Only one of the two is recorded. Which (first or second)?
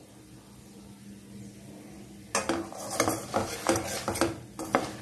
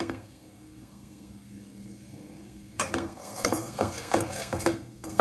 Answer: first